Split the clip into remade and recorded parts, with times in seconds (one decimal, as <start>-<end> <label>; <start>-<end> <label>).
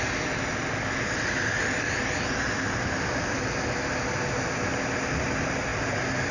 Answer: 0.0-6.3 recorded